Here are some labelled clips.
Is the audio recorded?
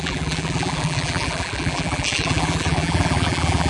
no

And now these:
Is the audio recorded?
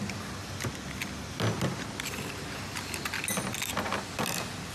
yes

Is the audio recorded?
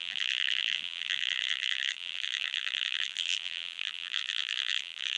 no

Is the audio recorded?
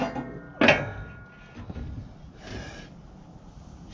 yes